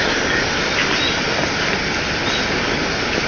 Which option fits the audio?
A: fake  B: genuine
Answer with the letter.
B